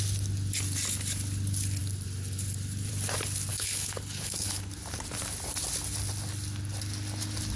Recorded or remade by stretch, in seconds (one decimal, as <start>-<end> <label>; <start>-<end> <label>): 0.0-3.5 recorded; 3.5-4.7 remade; 4.7-7.6 recorded